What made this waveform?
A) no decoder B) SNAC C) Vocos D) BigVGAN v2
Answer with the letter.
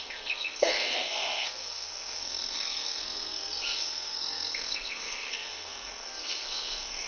B